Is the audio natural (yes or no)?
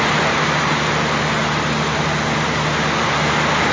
yes